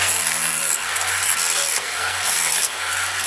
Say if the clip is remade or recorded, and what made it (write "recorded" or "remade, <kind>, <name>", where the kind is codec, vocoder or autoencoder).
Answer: remade, codec, SNAC